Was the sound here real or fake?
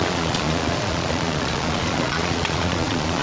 fake